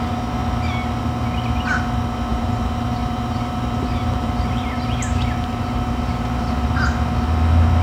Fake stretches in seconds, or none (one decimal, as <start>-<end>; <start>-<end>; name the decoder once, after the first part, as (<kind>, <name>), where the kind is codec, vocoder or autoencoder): 2.3-6.8 (vocoder, BigVGAN v2)